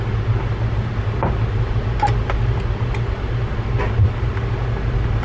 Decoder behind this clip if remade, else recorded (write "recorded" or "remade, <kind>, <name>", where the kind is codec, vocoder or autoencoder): recorded